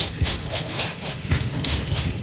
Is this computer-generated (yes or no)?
yes